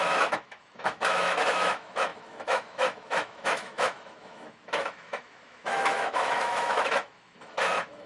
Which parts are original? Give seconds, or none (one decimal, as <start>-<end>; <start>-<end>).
none